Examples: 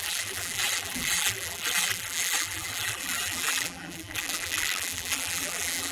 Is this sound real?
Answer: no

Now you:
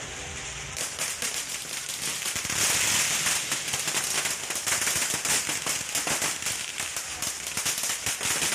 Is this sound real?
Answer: yes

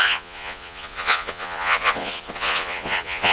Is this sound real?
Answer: no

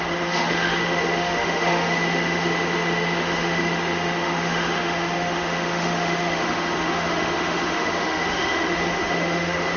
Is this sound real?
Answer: no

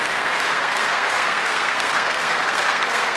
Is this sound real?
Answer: no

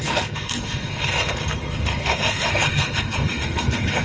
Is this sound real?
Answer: no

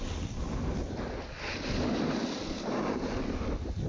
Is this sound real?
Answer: yes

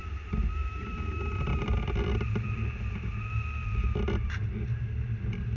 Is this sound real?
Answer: yes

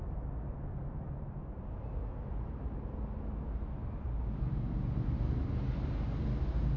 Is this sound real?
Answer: yes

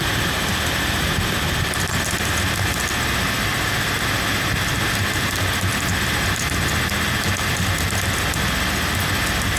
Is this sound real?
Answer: yes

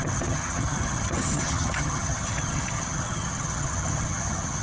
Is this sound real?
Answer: no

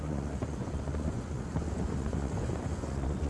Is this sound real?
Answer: no